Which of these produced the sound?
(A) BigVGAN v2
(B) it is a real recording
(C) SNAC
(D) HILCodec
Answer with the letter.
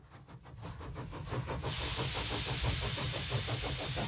B